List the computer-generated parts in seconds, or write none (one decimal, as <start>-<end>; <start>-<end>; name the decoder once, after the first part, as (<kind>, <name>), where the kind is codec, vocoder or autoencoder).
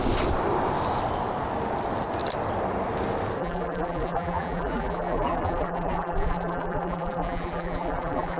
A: 3.4-8.4 (vocoder, BigVGAN v2)